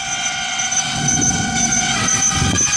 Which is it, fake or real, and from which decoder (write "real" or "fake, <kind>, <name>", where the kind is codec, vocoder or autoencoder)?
fake, vocoder, WaveNeXt